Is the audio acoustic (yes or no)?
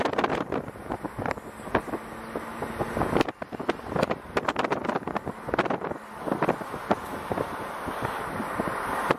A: yes